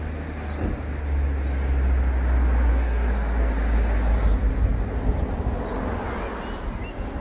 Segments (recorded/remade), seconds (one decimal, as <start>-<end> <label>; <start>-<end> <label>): 0.0-2.7 recorded; 2.7-3.5 remade; 3.5-7.2 recorded